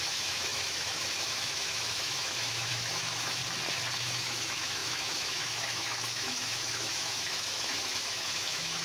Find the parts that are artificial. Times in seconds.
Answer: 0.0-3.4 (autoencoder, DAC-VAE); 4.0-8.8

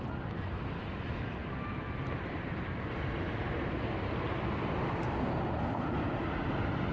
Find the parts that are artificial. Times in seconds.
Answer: none

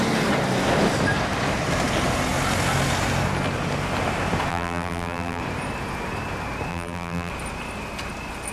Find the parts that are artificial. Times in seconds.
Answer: 4.5-5.4 (vocoder, BigVGAN v2); 6.7-7.3

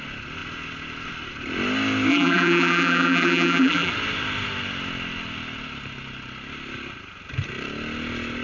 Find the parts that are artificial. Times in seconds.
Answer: 2.1-3.9 (vocoder, BigVGAN v2)

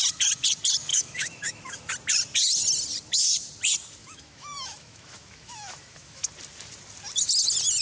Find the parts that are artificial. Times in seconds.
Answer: 0.9-1.9 (autoencoder, DAC-VAE); 4.0-6.3